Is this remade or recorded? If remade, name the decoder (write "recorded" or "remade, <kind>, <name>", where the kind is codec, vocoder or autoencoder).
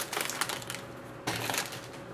recorded